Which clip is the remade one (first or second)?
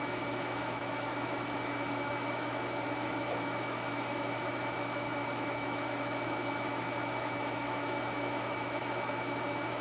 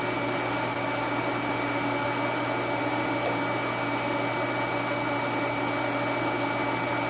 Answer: first